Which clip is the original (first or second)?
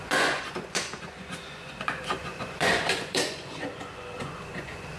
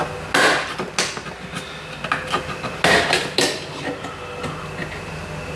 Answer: second